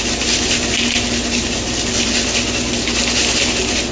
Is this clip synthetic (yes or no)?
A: no